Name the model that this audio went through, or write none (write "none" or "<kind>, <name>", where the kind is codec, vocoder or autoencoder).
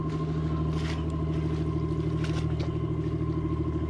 none